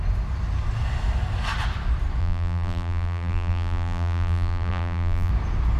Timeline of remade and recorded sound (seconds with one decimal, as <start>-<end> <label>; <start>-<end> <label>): 0.0-2.2 recorded; 2.2-5.3 remade; 5.3-5.8 recorded